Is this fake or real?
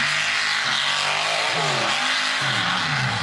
real